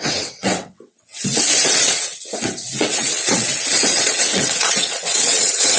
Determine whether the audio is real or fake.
fake